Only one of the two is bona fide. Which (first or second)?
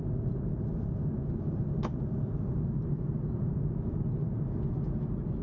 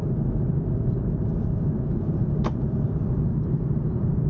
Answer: first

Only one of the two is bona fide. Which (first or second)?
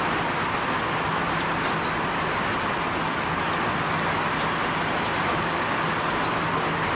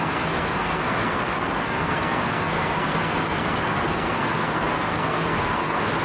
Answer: first